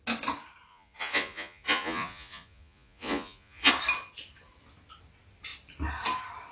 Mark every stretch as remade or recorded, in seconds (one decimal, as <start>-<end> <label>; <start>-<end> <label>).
0.0-0.7 recorded; 0.7-3.7 remade; 3.7-6.5 recorded